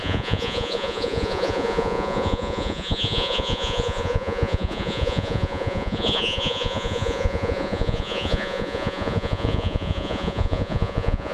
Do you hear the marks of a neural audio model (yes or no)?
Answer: yes